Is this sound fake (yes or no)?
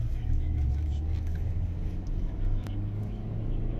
yes